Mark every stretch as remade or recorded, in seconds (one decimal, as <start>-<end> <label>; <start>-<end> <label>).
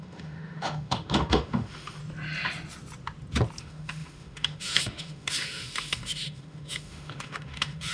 0.0-2.0 remade; 2.0-3.6 recorded; 3.6-7.9 remade